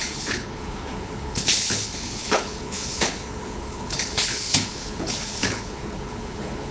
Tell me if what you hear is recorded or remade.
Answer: remade